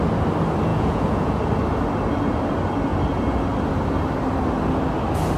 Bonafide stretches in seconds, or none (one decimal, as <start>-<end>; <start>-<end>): 0.0-0.7; 1.4-5.4